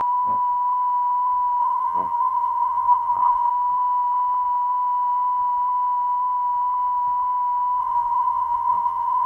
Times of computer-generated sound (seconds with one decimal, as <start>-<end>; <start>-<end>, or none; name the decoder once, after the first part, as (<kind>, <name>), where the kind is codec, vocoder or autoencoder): 1.6-3.5 (vocoder, BigVGAN v2); 7.8-9.3